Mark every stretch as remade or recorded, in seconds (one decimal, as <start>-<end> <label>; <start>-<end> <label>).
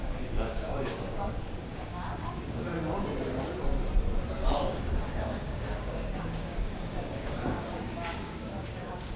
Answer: 0.0-2.7 remade; 2.7-4.3 recorded; 4.3-9.2 remade